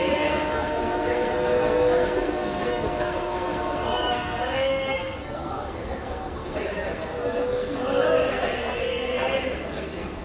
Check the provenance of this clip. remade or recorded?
remade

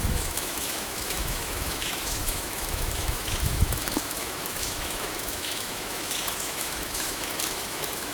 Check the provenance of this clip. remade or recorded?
remade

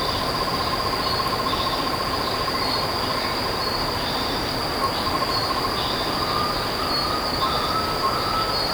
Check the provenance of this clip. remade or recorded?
recorded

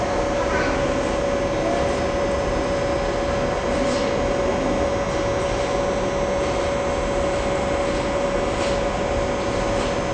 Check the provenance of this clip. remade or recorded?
recorded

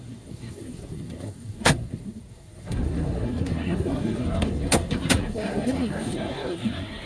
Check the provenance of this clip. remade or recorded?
remade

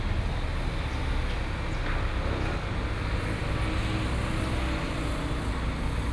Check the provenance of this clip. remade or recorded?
recorded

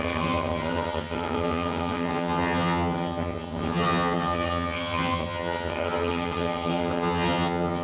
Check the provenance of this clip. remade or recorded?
remade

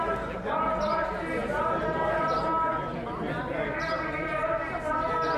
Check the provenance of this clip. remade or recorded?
recorded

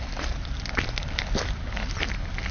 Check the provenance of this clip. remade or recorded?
recorded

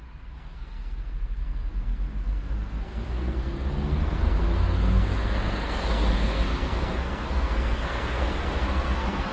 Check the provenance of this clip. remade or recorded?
remade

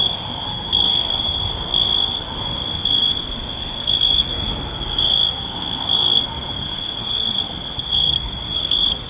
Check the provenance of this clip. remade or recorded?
remade